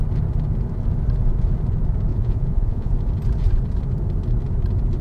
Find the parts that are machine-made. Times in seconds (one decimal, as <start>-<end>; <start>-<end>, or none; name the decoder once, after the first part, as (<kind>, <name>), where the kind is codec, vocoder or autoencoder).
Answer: 2.1-2.9 (vocoder, Vocos)